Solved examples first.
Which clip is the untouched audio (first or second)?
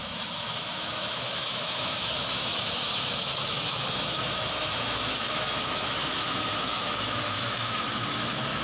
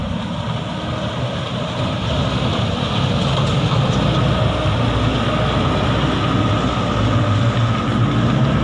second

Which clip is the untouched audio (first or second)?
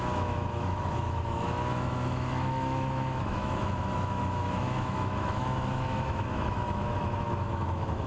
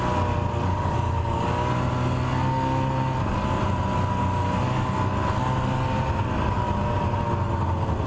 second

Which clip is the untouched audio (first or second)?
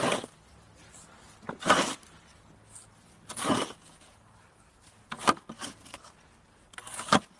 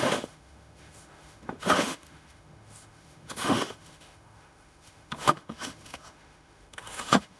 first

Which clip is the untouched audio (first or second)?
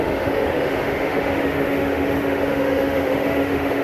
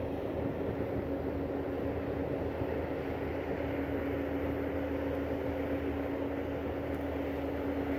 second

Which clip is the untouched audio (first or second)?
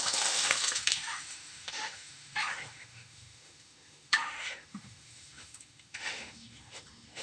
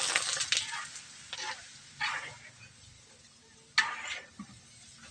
second